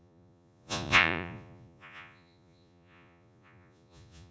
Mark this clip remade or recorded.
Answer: remade